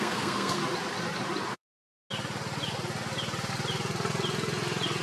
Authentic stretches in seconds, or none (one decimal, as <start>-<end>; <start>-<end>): 0.6-1.5; 1.9-5.0